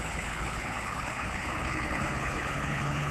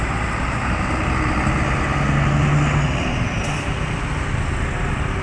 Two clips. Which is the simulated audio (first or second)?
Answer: first